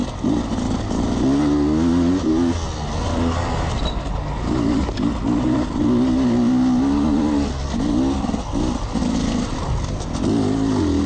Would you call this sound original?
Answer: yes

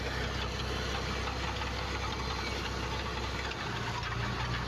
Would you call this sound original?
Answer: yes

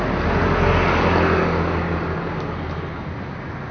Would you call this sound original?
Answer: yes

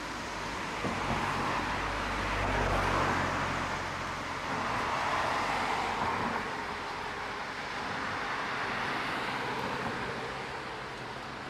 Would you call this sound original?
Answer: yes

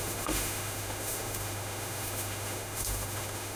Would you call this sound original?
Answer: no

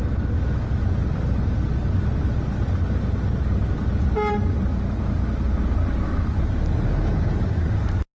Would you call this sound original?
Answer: yes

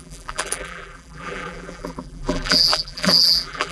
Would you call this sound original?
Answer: no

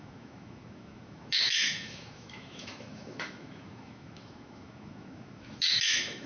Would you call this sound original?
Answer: no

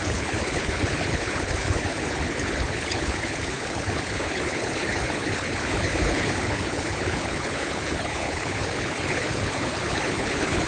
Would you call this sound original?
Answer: no